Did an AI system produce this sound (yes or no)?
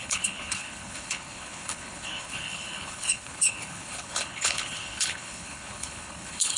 yes